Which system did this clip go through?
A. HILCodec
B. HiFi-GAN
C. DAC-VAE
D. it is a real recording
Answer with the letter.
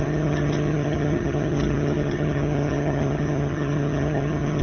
B